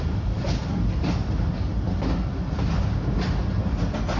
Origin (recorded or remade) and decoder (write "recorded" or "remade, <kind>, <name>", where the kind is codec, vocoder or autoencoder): recorded